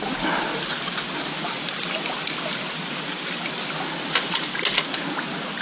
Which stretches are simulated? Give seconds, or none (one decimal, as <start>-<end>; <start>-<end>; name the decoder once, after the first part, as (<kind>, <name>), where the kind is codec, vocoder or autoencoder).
none